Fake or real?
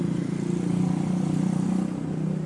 real